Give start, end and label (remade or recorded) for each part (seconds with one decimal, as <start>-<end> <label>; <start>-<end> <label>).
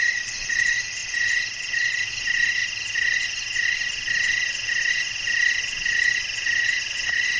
0.0-2.6 remade; 2.6-5.6 recorded; 5.6-7.4 remade